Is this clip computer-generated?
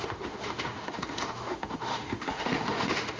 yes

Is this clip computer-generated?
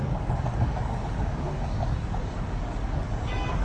yes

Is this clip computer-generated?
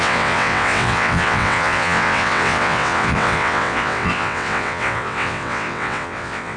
yes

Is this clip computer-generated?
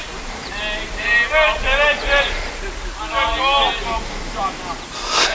no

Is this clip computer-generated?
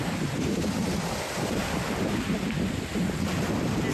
no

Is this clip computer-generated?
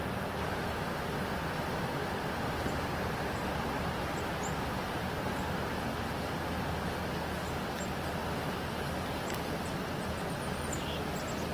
no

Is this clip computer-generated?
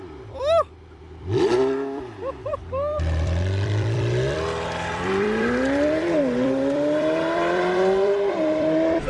yes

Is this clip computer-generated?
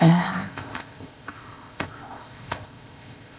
yes